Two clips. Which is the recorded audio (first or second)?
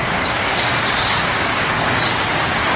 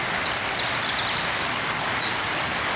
second